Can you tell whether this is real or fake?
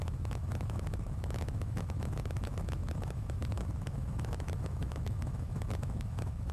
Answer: fake